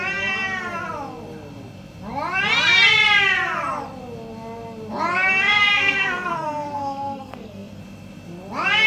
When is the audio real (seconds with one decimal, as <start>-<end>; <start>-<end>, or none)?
0.0-5.6; 7.8-8.9